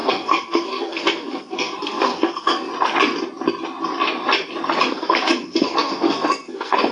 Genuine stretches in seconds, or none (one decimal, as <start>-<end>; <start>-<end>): 2.7-4.9